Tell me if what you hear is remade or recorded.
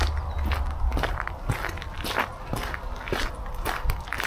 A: recorded